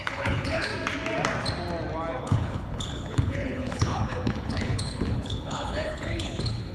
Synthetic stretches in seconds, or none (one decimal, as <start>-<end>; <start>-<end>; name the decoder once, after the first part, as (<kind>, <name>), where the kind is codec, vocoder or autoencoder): 0.0-0.7 (codec, HILCodec); 2.2-6.7